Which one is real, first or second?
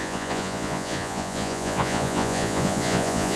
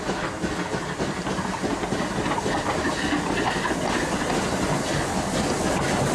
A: second